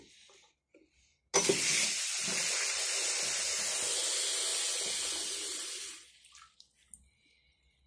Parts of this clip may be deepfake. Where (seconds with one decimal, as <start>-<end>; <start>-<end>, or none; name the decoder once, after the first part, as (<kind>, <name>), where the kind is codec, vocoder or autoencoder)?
none